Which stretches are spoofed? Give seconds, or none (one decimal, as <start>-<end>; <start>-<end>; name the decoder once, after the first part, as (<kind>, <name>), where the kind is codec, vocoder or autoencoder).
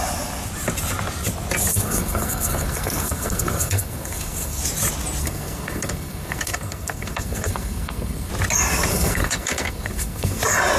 1.7-4.6 (codec, SNAC); 5.2-8.3; 8.9-10.4